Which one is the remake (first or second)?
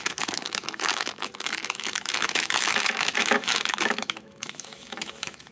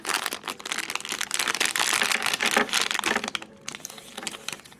first